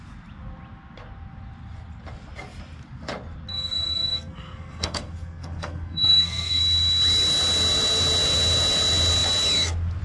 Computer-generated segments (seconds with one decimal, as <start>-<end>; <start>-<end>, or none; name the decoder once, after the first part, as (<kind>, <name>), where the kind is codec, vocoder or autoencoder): 3.5-6.6 (codec, SNAC)